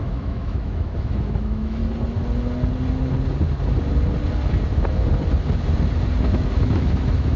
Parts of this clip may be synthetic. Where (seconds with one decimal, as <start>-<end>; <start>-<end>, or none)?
0.0-1.8; 6.2-7.4